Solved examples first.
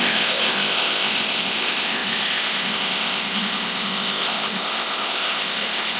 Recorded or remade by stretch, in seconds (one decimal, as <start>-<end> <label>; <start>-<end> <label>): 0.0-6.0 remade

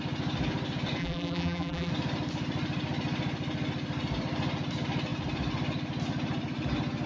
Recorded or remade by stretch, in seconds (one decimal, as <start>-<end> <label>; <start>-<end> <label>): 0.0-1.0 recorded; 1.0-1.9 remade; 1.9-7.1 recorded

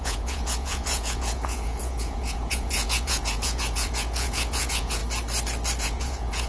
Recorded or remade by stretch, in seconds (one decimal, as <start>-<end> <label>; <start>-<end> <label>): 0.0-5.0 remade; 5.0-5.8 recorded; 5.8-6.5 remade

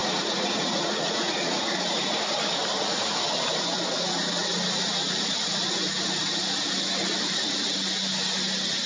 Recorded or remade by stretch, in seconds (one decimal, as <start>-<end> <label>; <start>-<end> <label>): 0.0-1.6 remade; 1.6-8.9 recorded

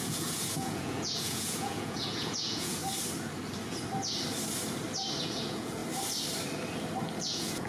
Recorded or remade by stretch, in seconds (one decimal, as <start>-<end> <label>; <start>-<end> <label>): 0.0-2.8 remade; 2.8-5.2 recorded; 5.2-5.8 remade; 5.8-7.2 recorded; 7.2-7.7 remade

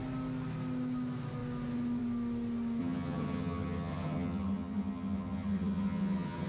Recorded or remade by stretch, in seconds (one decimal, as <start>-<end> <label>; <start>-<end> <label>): 0.0-2.8 recorded; 2.8-6.5 remade